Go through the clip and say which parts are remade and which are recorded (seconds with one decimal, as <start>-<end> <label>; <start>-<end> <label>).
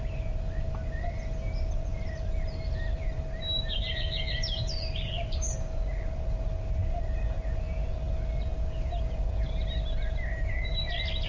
0.0-11.3 recorded